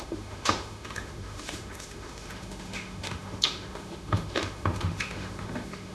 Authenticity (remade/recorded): remade